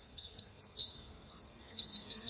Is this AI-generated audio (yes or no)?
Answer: yes